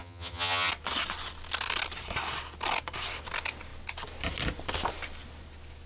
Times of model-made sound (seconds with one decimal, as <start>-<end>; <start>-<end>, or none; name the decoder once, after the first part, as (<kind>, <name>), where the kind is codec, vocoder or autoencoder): 0.0-0.7 (vocoder, HiFi-GAN)